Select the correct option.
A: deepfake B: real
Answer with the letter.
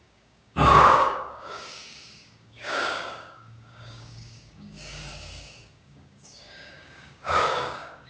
A